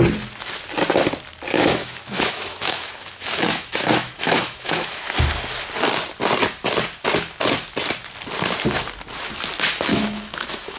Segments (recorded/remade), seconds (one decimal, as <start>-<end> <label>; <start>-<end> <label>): 0.0-1.5 recorded; 1.5-5.0 remade; 5.0-9.9 recorded; 9.9-10.8 remade